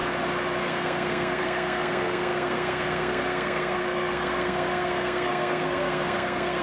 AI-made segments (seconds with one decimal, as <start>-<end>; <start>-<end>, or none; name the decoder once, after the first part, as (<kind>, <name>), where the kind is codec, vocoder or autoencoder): 0.6-6.6 (codec, SNAC)